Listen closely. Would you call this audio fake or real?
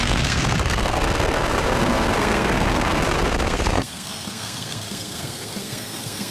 fake